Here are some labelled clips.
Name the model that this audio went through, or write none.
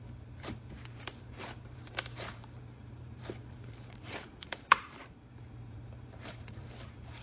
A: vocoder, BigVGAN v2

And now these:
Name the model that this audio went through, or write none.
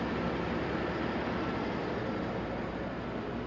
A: none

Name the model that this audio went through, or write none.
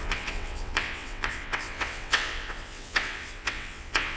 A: vocoder, WaveNeXt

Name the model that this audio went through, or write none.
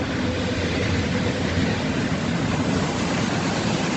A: none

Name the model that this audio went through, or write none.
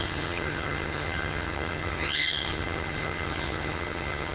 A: vocoder, HiFi-GAN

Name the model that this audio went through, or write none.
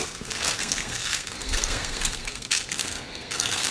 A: codec, SNAC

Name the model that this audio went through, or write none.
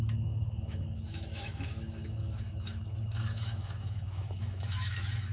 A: autoencoder, DAC-VAE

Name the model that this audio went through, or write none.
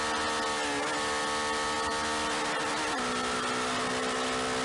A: none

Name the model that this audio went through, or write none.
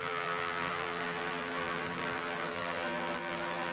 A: vocoder, BigVGAN v2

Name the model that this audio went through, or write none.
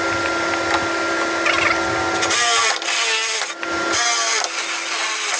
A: none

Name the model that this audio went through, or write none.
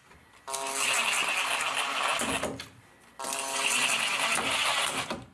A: none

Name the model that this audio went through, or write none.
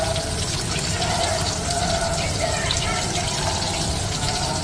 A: vocoder, BigVGAN v2